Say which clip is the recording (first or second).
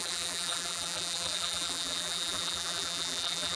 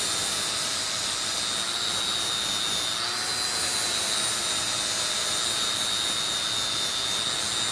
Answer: second